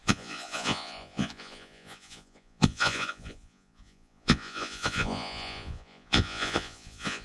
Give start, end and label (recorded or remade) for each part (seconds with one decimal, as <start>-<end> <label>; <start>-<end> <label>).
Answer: 0.0-7.2 remade

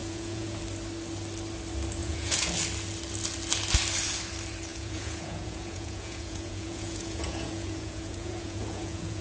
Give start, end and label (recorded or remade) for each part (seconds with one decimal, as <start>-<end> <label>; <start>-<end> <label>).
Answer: 0.0-0.6 remade; 0.6-2.0 recorded; 2.0-2.5 remade; 2.5-4.7 recorded; 4.7-9.2 remade

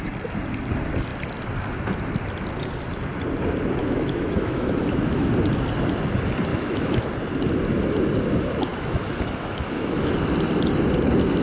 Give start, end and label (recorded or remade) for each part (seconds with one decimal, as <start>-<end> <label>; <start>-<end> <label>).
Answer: 0.0-3.8 recorded; 3.8-5.3 remade; 5.3-6.5 recorded; 6.5-7.1 remade; 7.1-8.7 recorded; 8.7-10.1 remade; 10.1-11.4 recorded

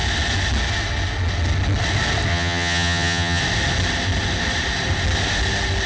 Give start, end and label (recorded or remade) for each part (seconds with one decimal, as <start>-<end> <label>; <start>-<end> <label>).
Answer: 0.0-2.3 recorded; 2.3-3.4 remade; 3.4-5.9 recorded

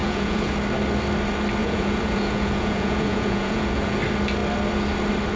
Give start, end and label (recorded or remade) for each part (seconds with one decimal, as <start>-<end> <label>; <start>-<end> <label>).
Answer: 0.0-0.5 remade; 0.5-1.6 recorded; 1.6-4.0 remade; 4.0-5.4 recorded

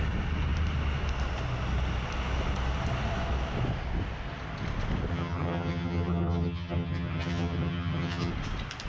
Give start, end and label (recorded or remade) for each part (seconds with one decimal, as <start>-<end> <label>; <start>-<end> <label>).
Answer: 0.0-5.1 recorded; 5.1-8.3 remade; 8.3-8.9 recorded

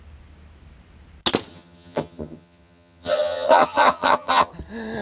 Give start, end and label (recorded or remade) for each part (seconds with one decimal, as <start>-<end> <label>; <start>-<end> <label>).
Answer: 0.0-1.5 recorded; 1.5-4.5 remade; 4.5-5.0 recorded